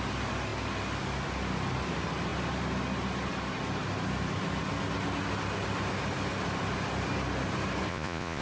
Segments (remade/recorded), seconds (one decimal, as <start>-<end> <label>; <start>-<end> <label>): 0.0-7.9 recorded; 7.9-8.4 remade